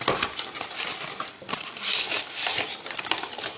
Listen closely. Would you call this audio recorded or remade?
recorded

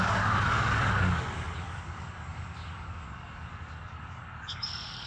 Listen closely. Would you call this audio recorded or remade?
remade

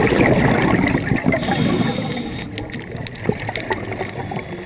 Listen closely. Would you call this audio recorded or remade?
recorded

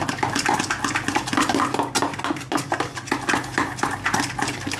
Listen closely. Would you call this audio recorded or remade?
recorded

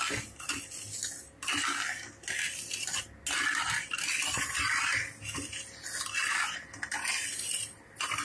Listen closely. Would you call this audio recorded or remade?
recorded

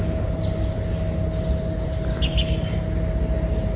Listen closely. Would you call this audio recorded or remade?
recorded